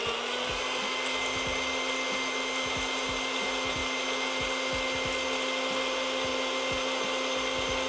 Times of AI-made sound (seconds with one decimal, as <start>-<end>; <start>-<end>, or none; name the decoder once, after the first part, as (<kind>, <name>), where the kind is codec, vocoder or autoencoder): none